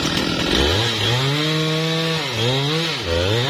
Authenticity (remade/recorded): recorded